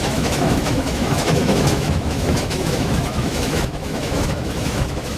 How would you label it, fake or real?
fake